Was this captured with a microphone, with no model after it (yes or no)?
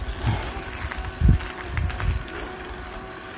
yes